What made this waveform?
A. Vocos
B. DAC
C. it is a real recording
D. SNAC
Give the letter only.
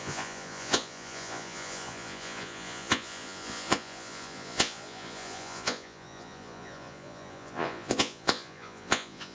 A